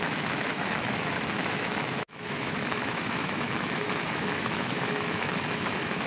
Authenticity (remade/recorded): remade